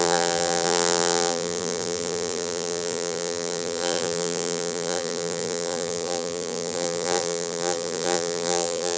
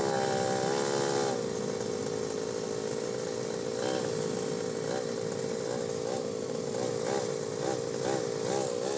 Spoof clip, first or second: first